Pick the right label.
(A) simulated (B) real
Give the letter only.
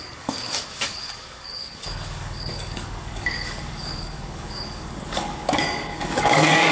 A